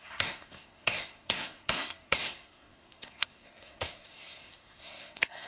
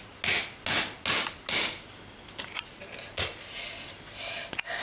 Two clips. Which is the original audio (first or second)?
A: second